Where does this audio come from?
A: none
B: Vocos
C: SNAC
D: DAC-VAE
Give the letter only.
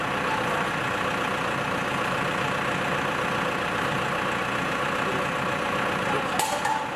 A